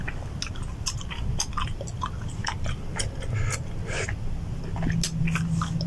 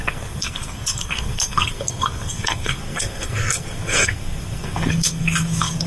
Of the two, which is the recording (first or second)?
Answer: first